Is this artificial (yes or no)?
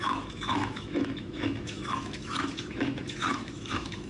yes